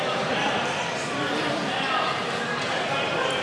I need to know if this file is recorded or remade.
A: recorded